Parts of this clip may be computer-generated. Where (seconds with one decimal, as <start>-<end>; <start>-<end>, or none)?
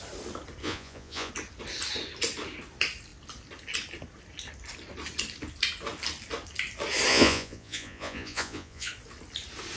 0.6-1.3; 7.1-8.9